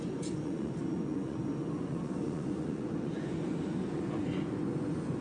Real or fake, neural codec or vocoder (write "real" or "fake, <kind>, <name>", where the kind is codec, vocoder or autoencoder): fake, vocoder, Vocos